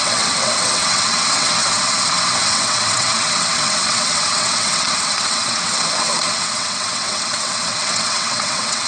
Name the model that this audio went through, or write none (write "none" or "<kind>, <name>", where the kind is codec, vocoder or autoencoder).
vocoder, WaveNeXt